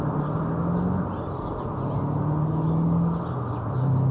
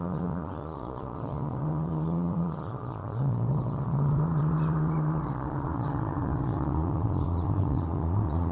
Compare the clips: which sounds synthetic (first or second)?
second